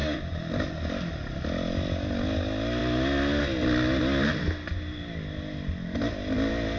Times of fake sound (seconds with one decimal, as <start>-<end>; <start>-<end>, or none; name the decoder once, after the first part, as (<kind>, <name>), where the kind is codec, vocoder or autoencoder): none